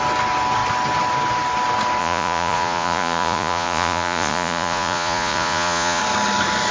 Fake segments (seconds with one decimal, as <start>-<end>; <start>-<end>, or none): 2.0-6.0

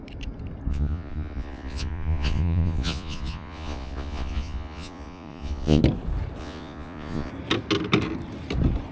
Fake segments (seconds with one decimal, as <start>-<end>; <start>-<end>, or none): 0.7-5.8; 6.4-7.3

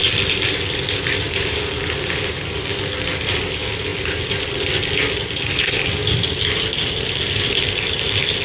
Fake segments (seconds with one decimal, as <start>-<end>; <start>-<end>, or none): none

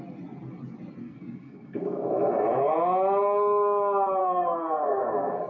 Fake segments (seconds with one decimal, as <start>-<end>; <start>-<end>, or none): 1.0-2.7; 4.2-5.5

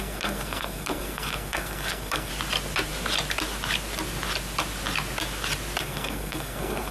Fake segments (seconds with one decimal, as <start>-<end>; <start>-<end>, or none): 0.0-2.3; 5.8-6.9